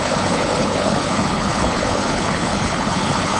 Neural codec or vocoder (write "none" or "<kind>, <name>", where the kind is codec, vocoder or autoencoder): codec, HILCodec